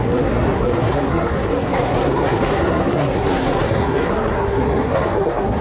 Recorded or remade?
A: remade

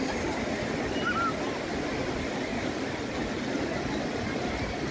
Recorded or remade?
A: recorded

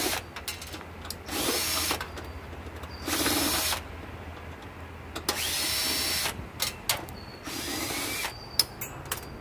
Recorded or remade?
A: recorded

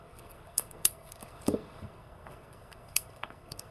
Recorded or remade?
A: remade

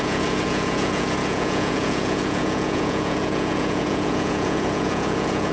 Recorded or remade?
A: remade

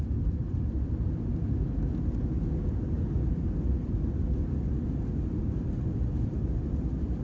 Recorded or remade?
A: recorded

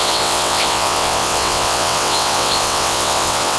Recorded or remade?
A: remade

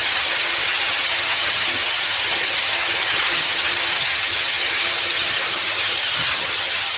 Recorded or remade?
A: remade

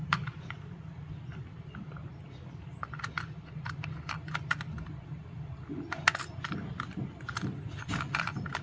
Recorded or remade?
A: recorded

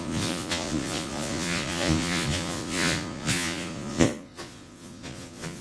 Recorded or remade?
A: remade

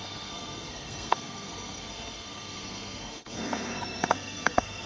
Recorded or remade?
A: remade